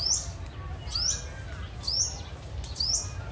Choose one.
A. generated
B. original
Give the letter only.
B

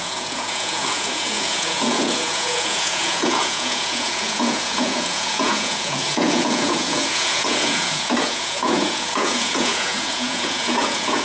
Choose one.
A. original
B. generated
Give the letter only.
B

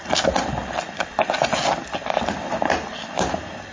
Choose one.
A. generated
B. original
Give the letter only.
B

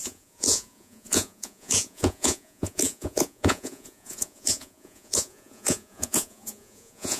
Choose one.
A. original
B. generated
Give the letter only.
B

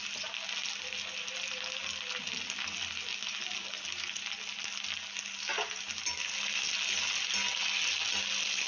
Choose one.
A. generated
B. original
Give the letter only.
B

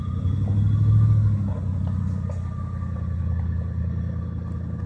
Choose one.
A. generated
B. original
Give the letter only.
B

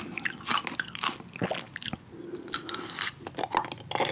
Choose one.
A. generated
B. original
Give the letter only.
B